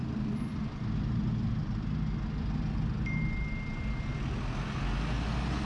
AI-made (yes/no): no